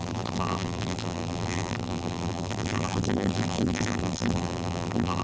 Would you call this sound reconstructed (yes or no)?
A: yes